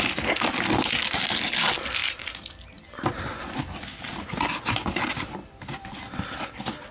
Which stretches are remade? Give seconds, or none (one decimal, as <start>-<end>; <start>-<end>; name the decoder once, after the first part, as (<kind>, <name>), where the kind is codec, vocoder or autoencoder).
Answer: none

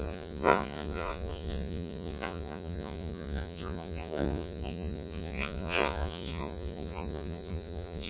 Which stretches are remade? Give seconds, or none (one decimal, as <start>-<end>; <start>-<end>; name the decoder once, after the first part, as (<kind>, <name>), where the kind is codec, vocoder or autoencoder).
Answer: 0.0-8.1 (vocoder, Vocos)